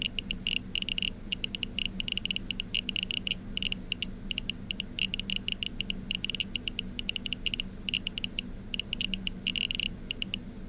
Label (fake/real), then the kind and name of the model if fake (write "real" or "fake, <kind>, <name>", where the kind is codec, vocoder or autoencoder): real